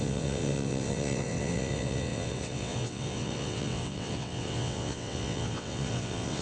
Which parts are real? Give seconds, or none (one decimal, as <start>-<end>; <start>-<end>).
none